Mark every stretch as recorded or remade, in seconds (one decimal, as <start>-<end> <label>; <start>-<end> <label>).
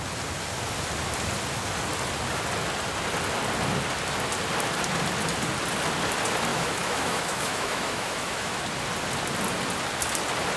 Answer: 0.0-6.5 recorded; 6.5-8.6 remade; 8.6-10.6 recorded